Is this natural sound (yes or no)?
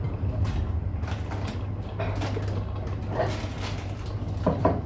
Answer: yes